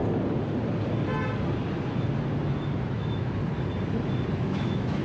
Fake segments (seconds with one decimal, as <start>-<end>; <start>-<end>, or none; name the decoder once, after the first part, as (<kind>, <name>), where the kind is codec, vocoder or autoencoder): 2.9-3.4 (autoencoder, DAC-VAE); 4.4-5.0